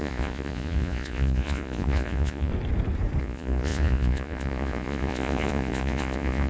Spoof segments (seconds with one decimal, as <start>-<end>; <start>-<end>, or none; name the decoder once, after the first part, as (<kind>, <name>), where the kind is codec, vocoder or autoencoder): 0.0-2.5 (vocoder, Vocos); 3.2-6.5